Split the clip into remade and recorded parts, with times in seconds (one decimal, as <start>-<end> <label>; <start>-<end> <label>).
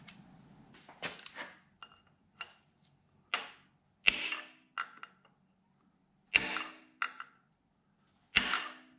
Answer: 0.0-9.0 recorded